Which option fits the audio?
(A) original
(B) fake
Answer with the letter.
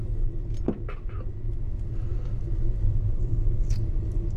A